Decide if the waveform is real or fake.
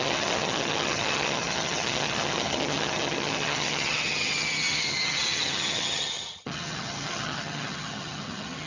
fake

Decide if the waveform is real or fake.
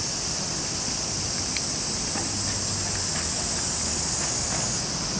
real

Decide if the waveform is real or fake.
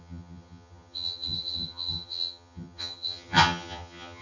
fake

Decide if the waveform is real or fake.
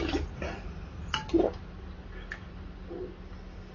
real